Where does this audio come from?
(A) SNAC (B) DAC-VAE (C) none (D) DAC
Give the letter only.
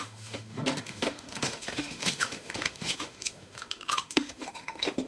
B